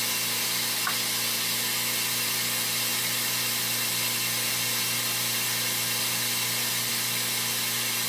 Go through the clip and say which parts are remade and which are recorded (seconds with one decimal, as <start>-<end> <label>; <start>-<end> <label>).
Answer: 0.0-8.1 recorded